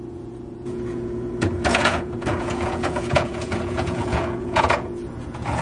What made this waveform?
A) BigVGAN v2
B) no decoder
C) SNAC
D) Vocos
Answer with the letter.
D